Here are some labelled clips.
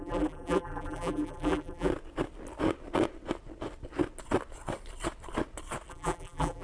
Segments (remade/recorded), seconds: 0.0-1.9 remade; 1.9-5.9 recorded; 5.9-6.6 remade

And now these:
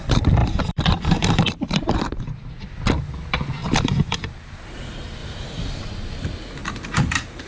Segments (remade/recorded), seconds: 0.0-0.4 recorded; 0.4-2.2 remade; 2.2-5.2 recorded; 5.2-5.9 remade; 5.9-6.6 recorded; 6.6-7.5 remade

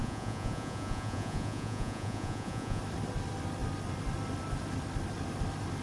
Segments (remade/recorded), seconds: 0.0-2.8 remade; 2.8-5.8 recorded

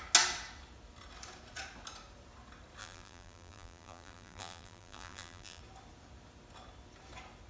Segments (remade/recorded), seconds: 0.0-2.8 recorded; 2.8-5.6 remade; 5.6-7.5 recorded

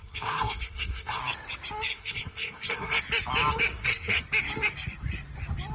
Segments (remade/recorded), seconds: 0.0-1.2 remade; 1.2-1.9 recorded; 1.9-3.0 remade; 3.0-3.7 recorded; 3.7-4.2 remade; 4.2-5.7 recorded

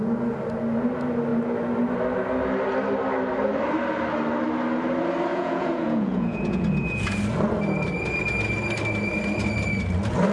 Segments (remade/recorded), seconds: 0.0-5.3 recorded; 5.3-7.2 remade; 7.2-10.3 recorded

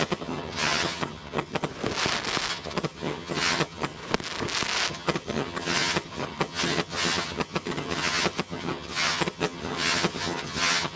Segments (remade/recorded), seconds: 0.0-1.7 remade; 1.7-2.5 recorded; 2.5-4.0 remade; 4.0-4.9 recorded; 4.9-11.0 remade

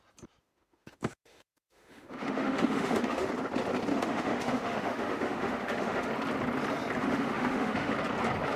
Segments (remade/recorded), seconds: 0.0-0.4 recorded; 0.4-3.3 remade; 3.3-3.9 recorded; 3.9-6.1 remade; 6.1-7.0 recorded; 7.0-7.9 remade; 7.9-8.6 recorded